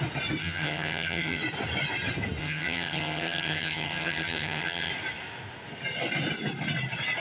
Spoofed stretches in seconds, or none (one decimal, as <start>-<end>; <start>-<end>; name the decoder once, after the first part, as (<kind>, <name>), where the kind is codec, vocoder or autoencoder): 0.4-1.4 (vocoder, HiFi-GAN); 2.4-4.9